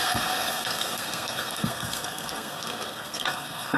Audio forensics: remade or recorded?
remade